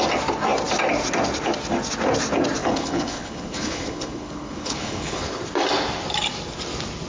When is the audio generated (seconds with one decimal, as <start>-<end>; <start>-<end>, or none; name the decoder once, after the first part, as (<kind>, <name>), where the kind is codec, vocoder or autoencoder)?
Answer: 2.6-5.4 (codec, HILCodec)